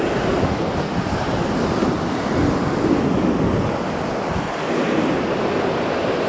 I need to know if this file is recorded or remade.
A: recorded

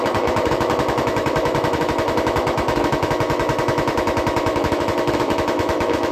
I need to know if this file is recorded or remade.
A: remade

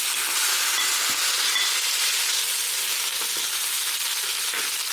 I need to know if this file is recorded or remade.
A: recorded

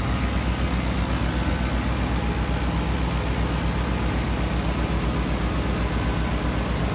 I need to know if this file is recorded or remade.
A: recorded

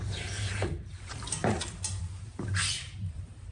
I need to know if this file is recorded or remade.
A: remade